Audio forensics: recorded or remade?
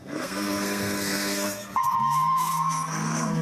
remade